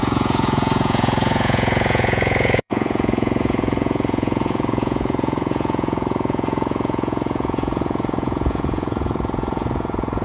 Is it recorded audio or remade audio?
remade